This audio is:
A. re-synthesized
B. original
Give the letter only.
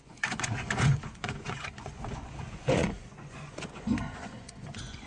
A